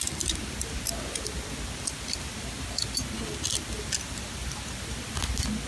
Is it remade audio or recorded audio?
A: recorded